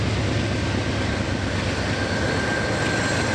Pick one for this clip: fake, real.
real